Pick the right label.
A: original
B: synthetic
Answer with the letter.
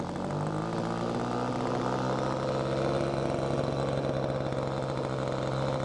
A